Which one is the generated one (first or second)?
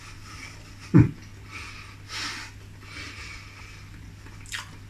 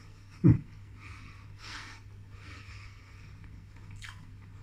second